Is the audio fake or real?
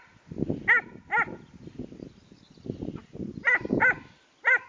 real